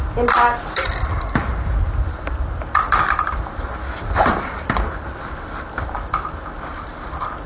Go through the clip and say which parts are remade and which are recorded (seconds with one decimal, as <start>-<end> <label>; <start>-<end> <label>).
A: 0.0-7.5 recorded